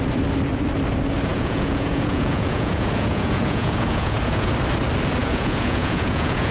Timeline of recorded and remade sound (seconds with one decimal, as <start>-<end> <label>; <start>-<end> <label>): 0.0-1.3 recorded; 1.3-4.5 remade; 4.5-5.2 recorded; 5.2-6.5 remade